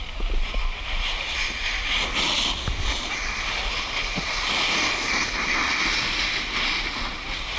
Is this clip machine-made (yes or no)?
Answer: no